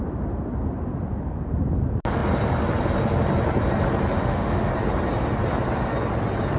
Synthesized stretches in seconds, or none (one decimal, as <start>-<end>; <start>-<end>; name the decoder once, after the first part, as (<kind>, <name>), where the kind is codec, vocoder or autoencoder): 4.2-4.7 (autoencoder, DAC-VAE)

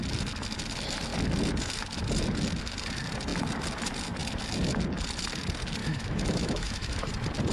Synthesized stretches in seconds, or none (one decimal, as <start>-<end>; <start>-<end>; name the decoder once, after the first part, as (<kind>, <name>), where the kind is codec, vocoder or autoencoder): 5.8-7.1 (autoencoder, DAC-VAE)

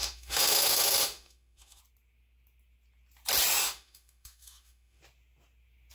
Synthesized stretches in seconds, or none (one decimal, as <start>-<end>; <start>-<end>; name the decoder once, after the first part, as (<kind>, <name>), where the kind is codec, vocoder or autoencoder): 0.0-1.8 (autoencoder, DAC-VAE); 3.6-5.0

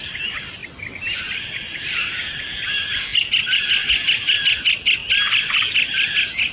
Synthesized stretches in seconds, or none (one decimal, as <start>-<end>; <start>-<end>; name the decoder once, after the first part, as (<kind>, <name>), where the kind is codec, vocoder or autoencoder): none

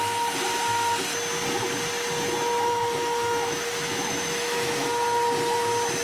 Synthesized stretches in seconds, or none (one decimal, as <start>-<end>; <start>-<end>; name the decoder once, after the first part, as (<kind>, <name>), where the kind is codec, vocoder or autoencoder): 2.7-4.7 (autoencoder, DAC-VAE)

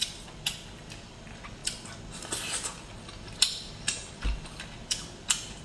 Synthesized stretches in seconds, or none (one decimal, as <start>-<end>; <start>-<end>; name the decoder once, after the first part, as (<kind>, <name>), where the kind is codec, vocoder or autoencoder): none